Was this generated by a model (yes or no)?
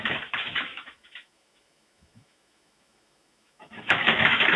yes